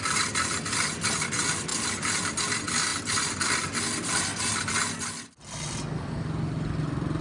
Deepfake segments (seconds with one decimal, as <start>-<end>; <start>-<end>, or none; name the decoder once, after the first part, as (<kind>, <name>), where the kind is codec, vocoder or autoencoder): none